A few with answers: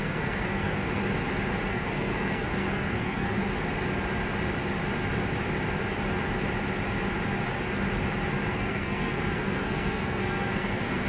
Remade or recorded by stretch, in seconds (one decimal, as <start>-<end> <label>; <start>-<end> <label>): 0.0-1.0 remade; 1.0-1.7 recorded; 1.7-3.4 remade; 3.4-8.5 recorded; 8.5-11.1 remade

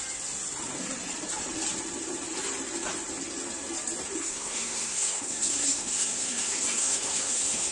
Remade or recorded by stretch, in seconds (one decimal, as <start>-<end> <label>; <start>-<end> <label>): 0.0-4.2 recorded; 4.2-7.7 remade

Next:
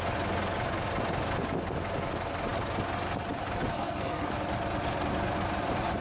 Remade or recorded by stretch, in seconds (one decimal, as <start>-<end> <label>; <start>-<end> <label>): 0.0-3.7 recorded; 3.7-4.3 remade; 4.3-6.0 recorded